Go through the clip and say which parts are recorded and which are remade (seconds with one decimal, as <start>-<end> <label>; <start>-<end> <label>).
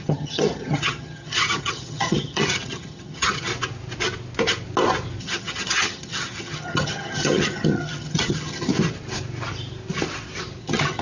0.0-3.5 remade; 3.5-5.2 recorded; 5.2-8.7 remade; 8.7-10.6 recorded; 10.6-11.0 remade